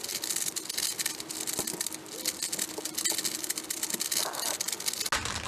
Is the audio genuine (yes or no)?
yes